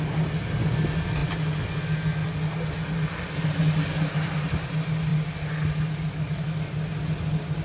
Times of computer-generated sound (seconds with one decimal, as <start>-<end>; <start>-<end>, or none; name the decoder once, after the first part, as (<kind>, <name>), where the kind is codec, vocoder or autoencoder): none